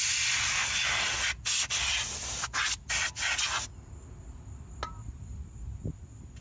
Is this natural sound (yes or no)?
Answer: yes